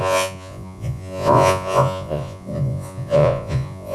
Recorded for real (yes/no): no